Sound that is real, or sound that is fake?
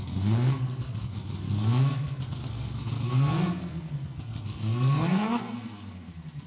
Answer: fake